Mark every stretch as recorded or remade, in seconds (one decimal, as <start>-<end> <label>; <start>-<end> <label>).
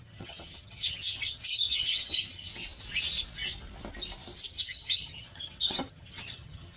0.0-2.5 remade; 2.5-4.5 recorded; 4.5-6.8 remade